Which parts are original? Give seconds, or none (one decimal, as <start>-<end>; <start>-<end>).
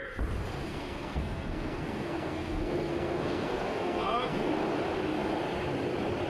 0.0-0.7; 4.5-6.3